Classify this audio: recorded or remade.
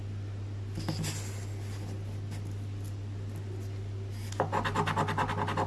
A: recorded